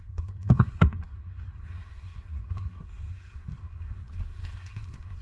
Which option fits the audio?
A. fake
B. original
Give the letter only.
A